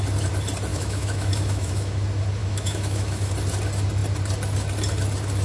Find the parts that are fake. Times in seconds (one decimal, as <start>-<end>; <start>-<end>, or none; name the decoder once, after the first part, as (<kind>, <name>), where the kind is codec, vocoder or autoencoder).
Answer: 0.7-2.0 (autoencoder, DAC-VAE); 2.4-3.3